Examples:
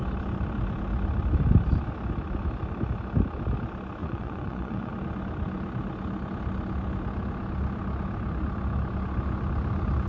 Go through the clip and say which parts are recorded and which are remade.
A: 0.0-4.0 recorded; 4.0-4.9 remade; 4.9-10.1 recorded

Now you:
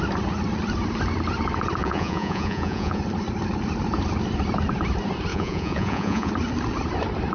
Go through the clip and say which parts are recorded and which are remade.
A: 0.0-1.8 recorded; 1.8-3.0 remade; 3.0-5.3 recorded; 5.3-6.3 remade; 6.3-7.3 recorded

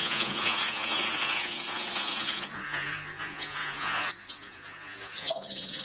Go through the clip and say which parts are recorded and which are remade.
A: 0.0-5.8 remade

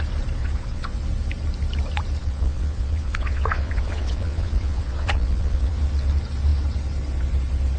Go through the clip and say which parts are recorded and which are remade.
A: 0.0-0.4 recorded; 0.4-1.0 remade; 1.0-2.2 recorded; 2.2-5.8 remade; 5.8-7.8 recorded

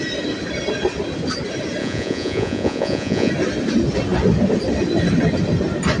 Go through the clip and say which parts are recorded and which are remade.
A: 0.0-1.8 recorded; 1.8-3.3 remade; 3.3-6.0 recorded

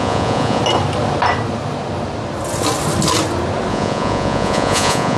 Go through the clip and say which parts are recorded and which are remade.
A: 0.0-0.6 remade; 0.6-3.7 recorded; 3.7-5.2 remade

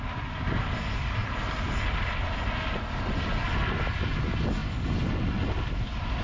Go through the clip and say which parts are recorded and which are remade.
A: 0.0-6.2 recorded